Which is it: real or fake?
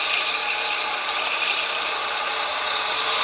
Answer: real